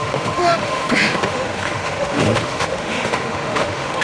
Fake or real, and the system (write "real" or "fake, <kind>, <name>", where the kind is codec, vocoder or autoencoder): fake, autoencoder, DAC-VAE